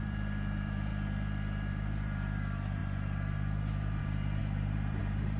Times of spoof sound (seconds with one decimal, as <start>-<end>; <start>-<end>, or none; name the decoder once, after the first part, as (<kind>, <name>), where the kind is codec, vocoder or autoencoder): 0.0-0.9 (vocoder, BigVGAN v2); 1.7-5.4